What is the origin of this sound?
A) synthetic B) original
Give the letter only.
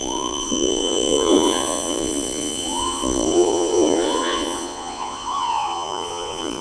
A